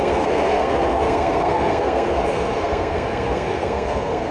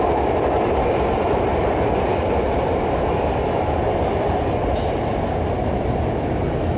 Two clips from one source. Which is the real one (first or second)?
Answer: second